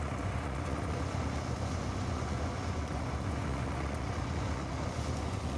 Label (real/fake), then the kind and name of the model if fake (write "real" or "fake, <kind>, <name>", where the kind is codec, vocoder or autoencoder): fake, vocoder, Vocos